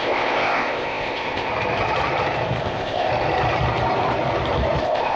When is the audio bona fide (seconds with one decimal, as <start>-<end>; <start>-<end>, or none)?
1.5-2.6; 3.1-4.8